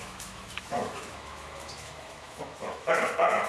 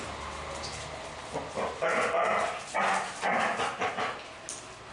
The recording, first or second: second